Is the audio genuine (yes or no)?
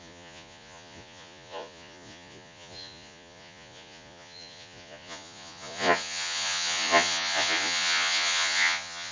no